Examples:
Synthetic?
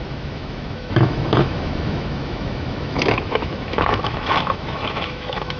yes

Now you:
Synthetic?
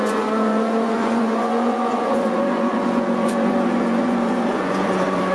yes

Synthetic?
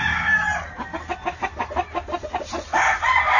no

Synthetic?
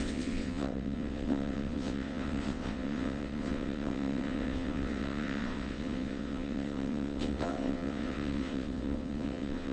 yes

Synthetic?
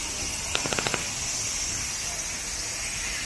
no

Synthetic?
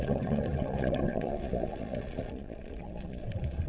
yes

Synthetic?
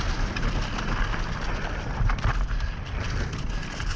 no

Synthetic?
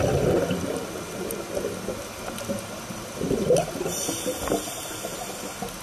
no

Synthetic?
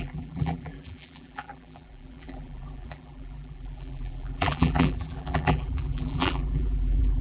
yes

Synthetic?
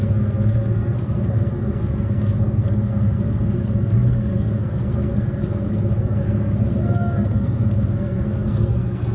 yes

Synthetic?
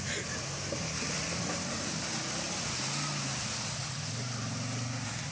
no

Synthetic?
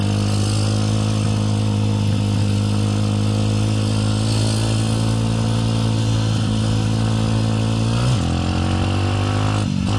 no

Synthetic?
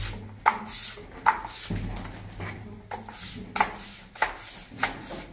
no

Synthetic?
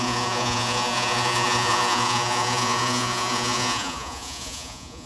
yes